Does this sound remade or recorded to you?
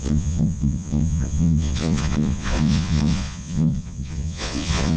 remade